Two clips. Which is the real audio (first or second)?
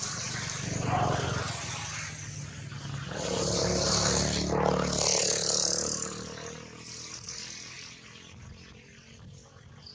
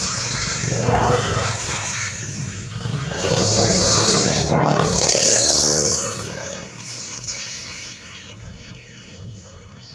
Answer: first